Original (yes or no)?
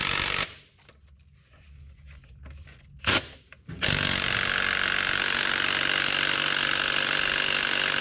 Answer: yes